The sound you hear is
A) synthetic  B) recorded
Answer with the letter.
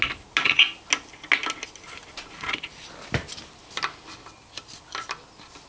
B